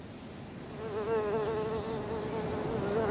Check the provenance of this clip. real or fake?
real